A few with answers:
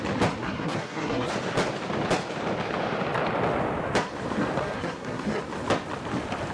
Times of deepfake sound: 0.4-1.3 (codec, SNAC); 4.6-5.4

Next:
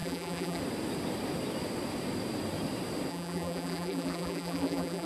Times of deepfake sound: 0.0-0.6 (vocoder, BigVGAN v2); 3.1-5.1

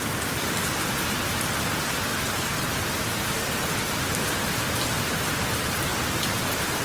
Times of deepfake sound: 0.0-2.1 (vocoder, BigVGAN v2); 5.2-5.9

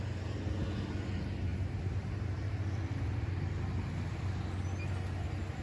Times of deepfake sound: none

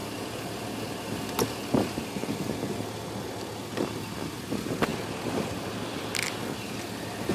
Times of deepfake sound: none

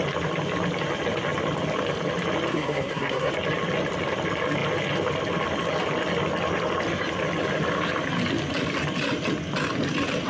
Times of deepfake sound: 2.5-3.3 (codec, SNAC)